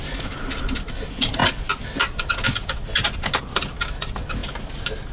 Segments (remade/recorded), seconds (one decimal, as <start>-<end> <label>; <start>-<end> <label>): 0.0-5.1 recorded